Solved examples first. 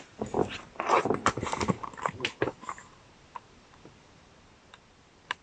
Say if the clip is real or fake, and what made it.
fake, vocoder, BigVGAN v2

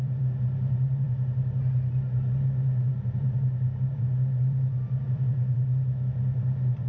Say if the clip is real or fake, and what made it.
fake, vocoder, BigVGAN v2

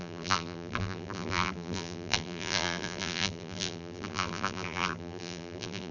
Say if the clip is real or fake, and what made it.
fake, vocoder, BigVGAN v2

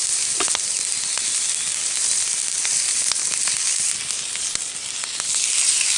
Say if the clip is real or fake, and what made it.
real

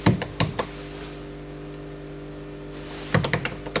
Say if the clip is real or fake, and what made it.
real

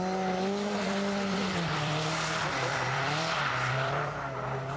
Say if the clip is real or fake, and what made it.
fake, vocoder, BigVGAN v2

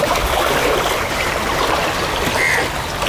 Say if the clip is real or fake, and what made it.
real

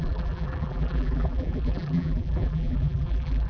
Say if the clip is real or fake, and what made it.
fake, vocoder, BigVGAN v2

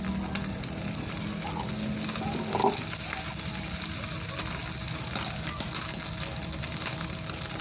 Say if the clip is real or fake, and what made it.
real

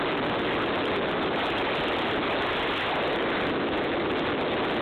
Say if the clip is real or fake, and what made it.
real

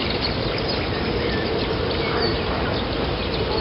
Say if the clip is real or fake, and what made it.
fake, vocoder, BigVGAN v2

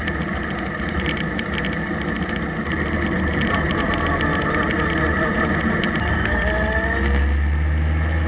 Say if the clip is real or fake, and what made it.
real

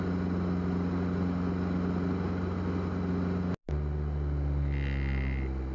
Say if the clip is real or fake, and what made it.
real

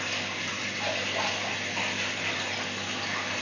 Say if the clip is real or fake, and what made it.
real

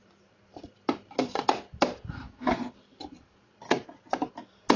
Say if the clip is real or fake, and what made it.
fake, vocoder, BigVGAN v2